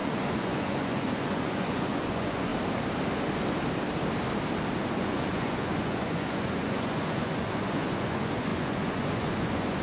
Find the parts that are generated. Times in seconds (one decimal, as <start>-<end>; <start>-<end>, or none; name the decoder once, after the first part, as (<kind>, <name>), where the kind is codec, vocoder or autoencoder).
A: 0.0-2.5 (vocoder, Vocos); 5.0-9.8